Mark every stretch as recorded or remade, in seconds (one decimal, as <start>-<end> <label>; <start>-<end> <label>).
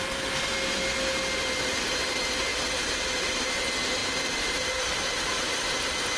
0.0-2.5 recorded; 2.5-3.5 remade; 3.5-4.0 recorded; 4.0-5.6 remade; 5.6-6.2 recorded